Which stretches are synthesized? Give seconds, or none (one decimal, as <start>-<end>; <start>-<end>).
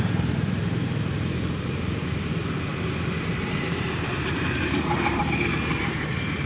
0.0-2.3; 3.2-5.2; 5.8-6.5